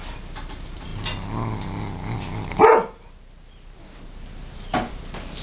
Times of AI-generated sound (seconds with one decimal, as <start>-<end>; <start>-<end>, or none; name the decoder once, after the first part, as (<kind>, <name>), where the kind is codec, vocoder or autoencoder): none